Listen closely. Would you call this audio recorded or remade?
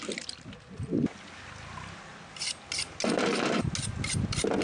recorded